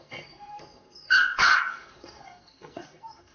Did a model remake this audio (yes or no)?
yes